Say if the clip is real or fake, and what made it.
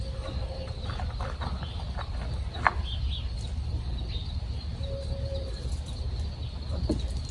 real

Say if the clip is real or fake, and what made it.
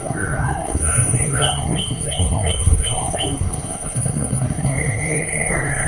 fake, codec, SNAC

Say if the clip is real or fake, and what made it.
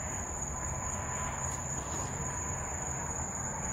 real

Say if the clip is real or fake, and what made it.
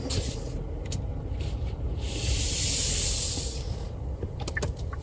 real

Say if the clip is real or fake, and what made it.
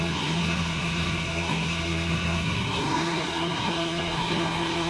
fake, codec, SNAC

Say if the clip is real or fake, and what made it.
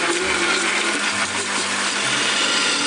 real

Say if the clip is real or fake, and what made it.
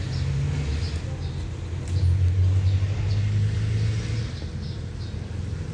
real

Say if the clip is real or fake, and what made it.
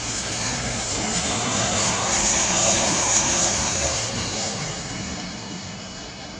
fake, codec, SNAC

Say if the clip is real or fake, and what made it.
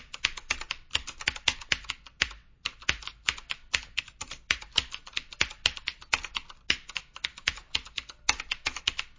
real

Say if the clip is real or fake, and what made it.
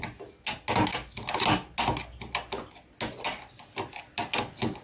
real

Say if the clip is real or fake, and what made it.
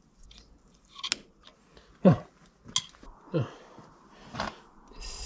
real